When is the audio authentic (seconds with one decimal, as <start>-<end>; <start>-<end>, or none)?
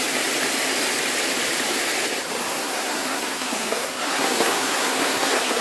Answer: 0.0-2.4